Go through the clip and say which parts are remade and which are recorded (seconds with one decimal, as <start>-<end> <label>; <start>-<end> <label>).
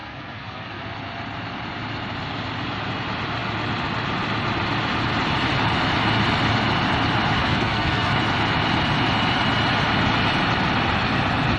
0.0-0.8 remade; 0.8-7.4 recorded; 7.4-8.1 remade; 8.1-11.6 recorded